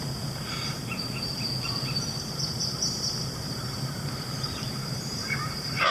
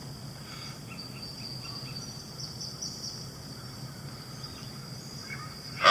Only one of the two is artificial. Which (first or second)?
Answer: first